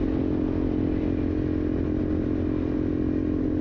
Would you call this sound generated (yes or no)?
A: no